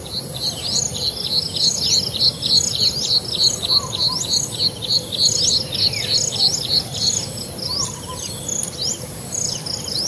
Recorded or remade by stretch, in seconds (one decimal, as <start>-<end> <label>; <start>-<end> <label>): 0.0-6.7 recorded; 6.7-10.1 remade

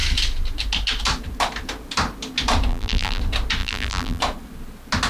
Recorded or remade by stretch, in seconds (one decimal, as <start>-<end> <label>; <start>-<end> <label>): 0.0-2.7 recorded; 2.7-3.2 remade; 3.2-3.6 recorded; 3.6-4.2 remade; 4.2-5.1 recorded

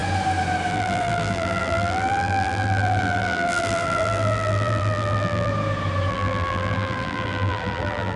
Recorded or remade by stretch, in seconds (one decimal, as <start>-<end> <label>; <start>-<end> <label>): 0.0-0.7 recorded; 0.7-5.5 remade; 5.5-6.1 recorded; 6.1-8.2 remade

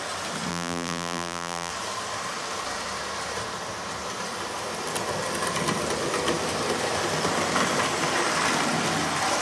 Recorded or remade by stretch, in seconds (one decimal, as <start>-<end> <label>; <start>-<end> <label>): 0.0-0.5 recorded; 0.5-1.7 remade; 1.7-9.4 recorded

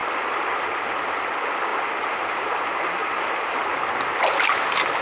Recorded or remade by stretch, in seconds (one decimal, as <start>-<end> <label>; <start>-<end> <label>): 0.0-1.7 recorded; 1.7-2.6 remade; 2.6-3.0 recorded; 3.0-3.6 remade; 3.6-5.0 recorded

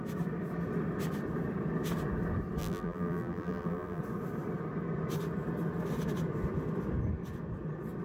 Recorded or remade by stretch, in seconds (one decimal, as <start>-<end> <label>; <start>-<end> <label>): 0.0-2.6 recorded; 2.6-4.0 remade; 4.0-8.0 recorded

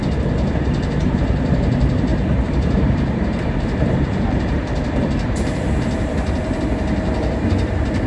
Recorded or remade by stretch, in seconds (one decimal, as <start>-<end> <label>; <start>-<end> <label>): 0.0-2.1 recorded; 2.1-6.6 remade; 6.6-8.1 recorded

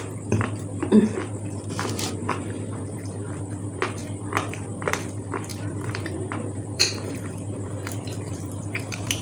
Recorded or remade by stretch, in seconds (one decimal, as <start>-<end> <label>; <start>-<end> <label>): 0.0-4.0 remade; 4.0-4.9 recorded; 4.9-9.2 remade